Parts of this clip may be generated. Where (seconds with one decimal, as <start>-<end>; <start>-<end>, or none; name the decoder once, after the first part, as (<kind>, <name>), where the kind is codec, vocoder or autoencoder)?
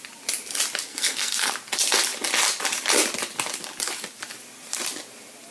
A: 0.9-1.5 (codec, SNAC)